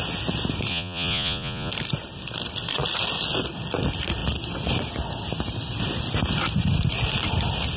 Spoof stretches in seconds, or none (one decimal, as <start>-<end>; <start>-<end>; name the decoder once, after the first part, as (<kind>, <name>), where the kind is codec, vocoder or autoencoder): 0.7-1.7 (vocoder, Vocos)